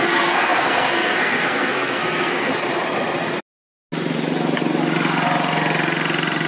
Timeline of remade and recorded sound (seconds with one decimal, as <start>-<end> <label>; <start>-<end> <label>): 0.0-2.5 remade; 2.5-6.5 recorded